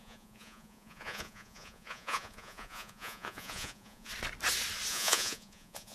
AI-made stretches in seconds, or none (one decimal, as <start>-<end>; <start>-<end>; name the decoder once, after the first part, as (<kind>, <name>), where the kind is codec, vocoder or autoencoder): 0.0-4.1 (vocoder, Vocos); 4.9-5.9